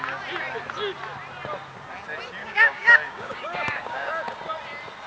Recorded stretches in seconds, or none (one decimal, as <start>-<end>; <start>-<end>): 0.0-2.4; 4.1-5.1